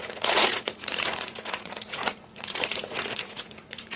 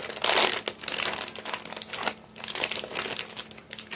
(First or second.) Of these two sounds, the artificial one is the first